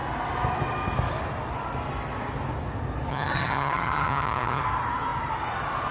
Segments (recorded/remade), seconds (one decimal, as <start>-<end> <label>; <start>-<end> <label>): 0.0-3.1 recorded; 3.1-4.6 remade; 4.6-5.9 recorded